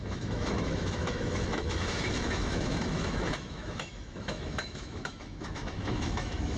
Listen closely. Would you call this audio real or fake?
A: fake